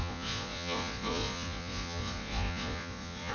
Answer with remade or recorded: remade